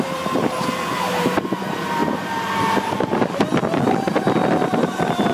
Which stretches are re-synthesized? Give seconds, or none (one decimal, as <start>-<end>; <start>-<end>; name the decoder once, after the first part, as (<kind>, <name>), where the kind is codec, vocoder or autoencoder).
0.0-2.0 (vocoder, BigVGAN v2); 4.1-5.3